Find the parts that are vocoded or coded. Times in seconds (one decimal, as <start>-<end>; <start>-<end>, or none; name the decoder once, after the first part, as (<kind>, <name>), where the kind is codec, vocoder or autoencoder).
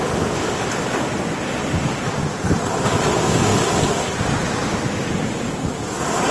none